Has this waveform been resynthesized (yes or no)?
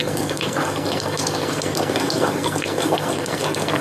yes